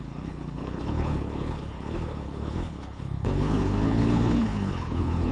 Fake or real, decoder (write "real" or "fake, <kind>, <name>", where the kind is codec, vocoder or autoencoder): fake, codec, HILCodec